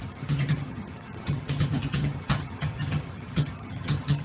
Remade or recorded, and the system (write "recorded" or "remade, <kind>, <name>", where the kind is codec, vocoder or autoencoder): remade, vocoder, HiFi-GAN